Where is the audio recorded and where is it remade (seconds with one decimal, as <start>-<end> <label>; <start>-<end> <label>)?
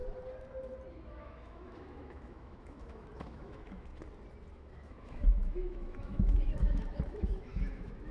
0.0-0.9 recorded; 0.9-3.9 remade; 3.9-4.5 recorded; 4.5-8.1 remade